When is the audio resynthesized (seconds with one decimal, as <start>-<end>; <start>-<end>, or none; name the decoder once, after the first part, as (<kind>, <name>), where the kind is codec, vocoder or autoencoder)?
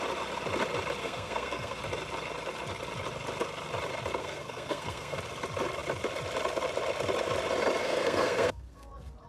1.0-1.8 (codec, SNAC); 4.2-5.2; 7.8-8.9